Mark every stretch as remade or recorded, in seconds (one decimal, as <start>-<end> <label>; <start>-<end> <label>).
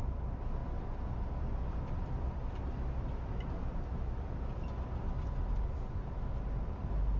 0.0-7.2 recorded